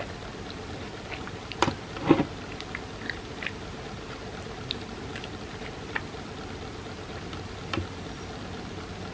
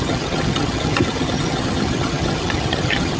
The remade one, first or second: second